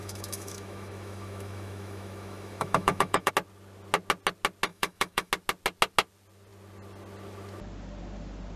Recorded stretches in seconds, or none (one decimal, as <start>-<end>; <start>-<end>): 3.3-4.7; 5.3-8.6